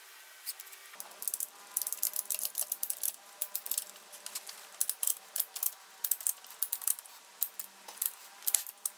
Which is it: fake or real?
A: real